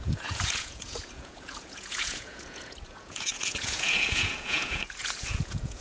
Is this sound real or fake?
fake